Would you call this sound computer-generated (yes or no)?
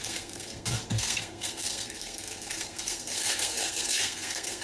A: yes